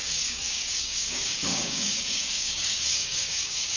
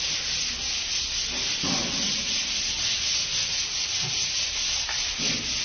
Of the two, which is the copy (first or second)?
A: first